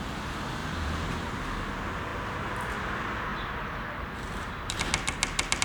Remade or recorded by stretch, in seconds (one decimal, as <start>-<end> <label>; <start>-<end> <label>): 0.0-0.6 recorded; 0.6-1.3 remade; 1.3-3.3 recorded; 3.3-4.9 remade; 4.9-5.6 recorded